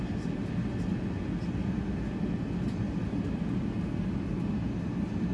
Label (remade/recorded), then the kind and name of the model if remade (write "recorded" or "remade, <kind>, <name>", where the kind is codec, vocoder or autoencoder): recorded